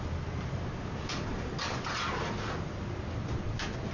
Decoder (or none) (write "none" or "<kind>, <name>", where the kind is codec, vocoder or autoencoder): none